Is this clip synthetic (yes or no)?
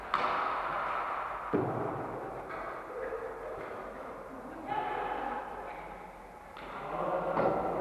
no